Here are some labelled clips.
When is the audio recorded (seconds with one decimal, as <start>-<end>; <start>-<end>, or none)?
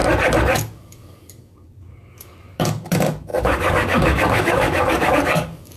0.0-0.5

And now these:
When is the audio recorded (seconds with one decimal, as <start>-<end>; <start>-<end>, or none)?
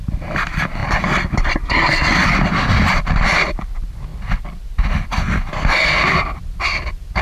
0.0-4.1; 5.1-7.2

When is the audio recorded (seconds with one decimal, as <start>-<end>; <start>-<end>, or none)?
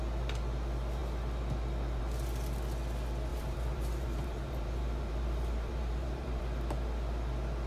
0.0-3.3; 6.4-7.7